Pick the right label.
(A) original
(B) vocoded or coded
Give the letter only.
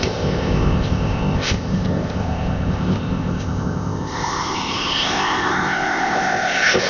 B